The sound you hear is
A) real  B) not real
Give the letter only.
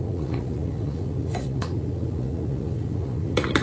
B